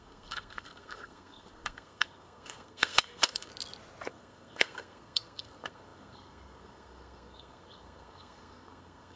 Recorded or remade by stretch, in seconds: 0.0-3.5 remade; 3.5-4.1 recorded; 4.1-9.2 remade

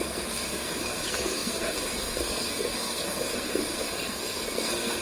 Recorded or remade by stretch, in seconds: 0.0-5.0 remade

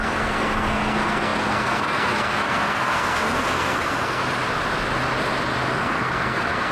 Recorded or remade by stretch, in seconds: 0.0-4.2 remade; 4.2-5.8 recorded; 5.8-6.7 remade

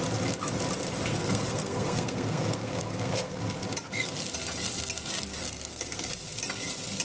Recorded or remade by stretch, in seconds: 0.0-1.1 recorded; 1.1-3.4 remade; 3.4-5.4 recorded; 5.4-6.2 remade; 6.2-7.0 recorded

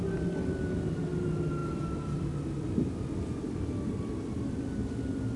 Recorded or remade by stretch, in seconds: 0.0-5.4 recorded

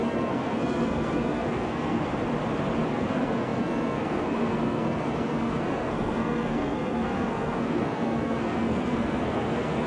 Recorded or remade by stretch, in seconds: 0.0-2.1 remade; 2.1-2.9 recorded; 2.9-9.9 remade

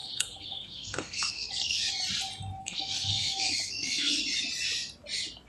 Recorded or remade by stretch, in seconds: 0.0-1.9 remade; 1.9-2.6 recorded; 2.6-4.2 remade; 4.2-5.5 recorded

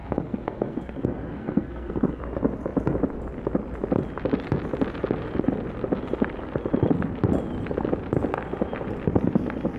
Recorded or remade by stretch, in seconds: 0.0-2.2 remade; 2.2-9.8 recorded